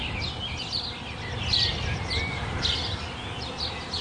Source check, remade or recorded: recorded